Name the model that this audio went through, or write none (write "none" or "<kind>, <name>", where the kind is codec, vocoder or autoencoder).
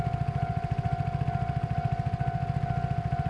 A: none